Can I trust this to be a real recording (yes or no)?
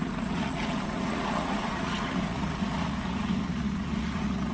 no